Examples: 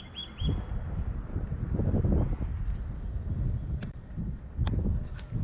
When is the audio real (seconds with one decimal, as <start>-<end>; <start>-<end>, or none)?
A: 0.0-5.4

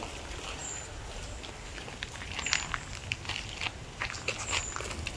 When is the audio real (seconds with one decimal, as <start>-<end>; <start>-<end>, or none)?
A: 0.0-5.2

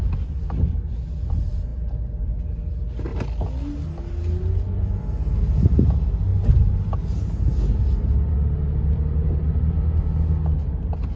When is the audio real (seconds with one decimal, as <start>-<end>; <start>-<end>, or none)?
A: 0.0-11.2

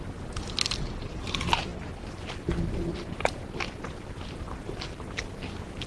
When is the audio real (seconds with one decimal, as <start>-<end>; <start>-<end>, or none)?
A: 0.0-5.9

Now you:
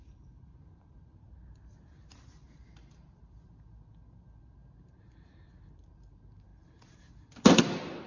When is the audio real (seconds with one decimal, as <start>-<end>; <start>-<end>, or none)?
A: 0.0-8.1

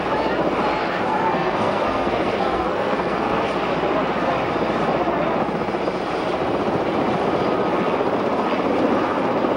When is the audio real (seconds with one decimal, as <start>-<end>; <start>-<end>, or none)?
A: 0.0-0.8; 3.5-9.6

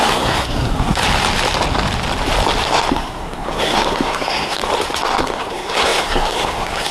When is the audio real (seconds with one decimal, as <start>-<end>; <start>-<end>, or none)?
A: 1.0-2.9; 4.6-5.2

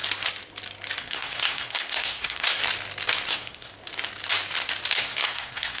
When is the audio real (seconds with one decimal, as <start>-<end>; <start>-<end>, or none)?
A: 0.0-1.0; 2.6-3.3; 3.7-5.0